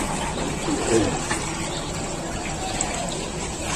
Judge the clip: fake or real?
real